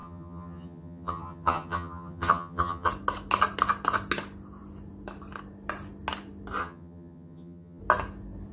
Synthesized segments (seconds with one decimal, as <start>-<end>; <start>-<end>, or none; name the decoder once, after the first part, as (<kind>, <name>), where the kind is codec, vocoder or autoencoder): 0.0-2.9 (vocoder, HiFi-GAN); 6.6-7.8